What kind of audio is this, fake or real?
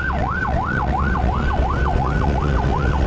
fake